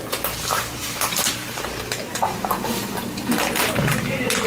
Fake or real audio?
fake